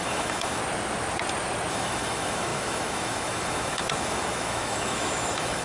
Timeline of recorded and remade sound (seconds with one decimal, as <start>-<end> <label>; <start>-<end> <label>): 0.0-0.6 remade; 0.6-1.7 recorded; 1.7-5.6 remade